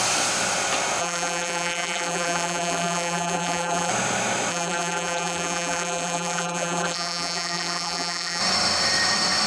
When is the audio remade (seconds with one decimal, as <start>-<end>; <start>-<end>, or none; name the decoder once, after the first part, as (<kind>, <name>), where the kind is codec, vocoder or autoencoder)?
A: 1.0-3.9 (vocoder, BigVGAN v2); 4.5-8.4